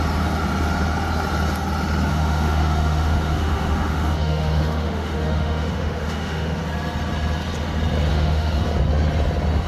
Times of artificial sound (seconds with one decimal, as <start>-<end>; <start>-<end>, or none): 2.1-6.6; 8.1-8.6